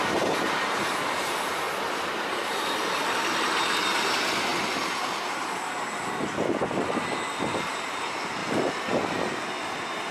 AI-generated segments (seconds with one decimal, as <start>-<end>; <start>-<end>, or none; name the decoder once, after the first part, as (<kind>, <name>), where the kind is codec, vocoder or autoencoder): 8.4-9.4 (vocoder, BigVGAN v2)

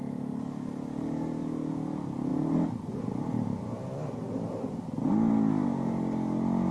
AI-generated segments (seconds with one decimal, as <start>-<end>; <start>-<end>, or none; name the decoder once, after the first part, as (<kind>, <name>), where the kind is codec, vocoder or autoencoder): none

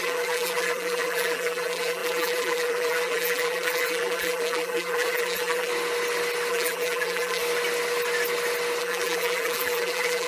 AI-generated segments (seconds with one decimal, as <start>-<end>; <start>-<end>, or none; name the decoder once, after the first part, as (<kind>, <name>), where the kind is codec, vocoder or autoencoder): 0.0-5.7 (vocoder, BigVGAN v2); 6.5-7.4; 8.8-10.3

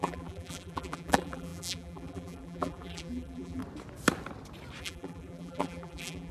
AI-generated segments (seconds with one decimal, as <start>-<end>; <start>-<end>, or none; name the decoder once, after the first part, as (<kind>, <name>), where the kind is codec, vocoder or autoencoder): 0.0-3.6 (vocoder, BigVGAN v2); 4.8-6.3

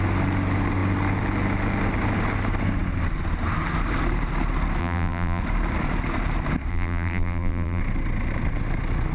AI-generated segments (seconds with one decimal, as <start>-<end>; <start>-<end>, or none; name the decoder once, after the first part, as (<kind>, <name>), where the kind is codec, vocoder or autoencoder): 4.8-5.4 (vocoder, BigVGAN v2); 6.7-7.8

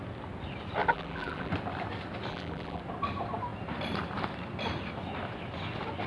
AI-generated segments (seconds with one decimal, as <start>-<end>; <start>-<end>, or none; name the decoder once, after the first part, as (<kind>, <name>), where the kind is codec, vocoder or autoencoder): 0.8-1.5 (vocoder, BigVGAN v2); 2.3-2.8